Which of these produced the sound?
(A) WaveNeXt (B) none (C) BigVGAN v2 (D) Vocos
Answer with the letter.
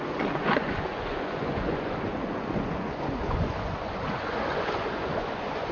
D